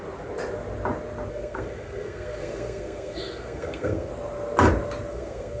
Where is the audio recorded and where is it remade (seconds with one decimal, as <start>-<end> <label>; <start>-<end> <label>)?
0.0-1.3 recorded; 1.3-4.1 remade; 4.1-5.1 recorded; 5.1-5.6 remade